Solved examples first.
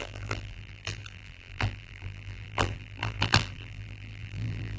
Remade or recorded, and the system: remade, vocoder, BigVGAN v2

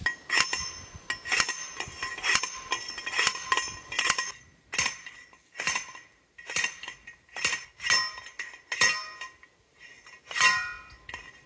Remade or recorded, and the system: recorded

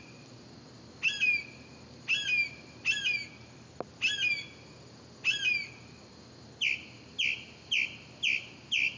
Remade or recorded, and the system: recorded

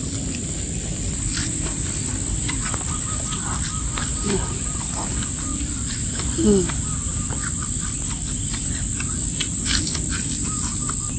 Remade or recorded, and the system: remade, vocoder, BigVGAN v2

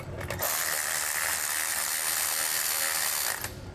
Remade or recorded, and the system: recorded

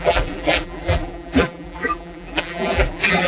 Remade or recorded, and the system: remade, vocoder, BigVGAN v2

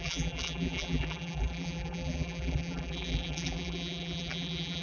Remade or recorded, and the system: remade, vocoder, BigVGAN v2